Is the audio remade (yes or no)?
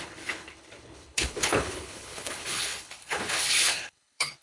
yes